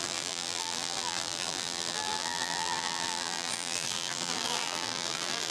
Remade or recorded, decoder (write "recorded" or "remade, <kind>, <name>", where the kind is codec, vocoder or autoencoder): remade, vocoder, BigVGAN v2